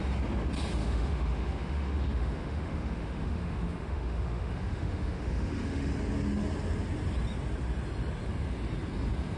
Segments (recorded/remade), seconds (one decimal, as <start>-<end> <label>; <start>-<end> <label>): 0.0-0.8 recorded; 0.8-5.9 remade; 5.9-9.4 recorded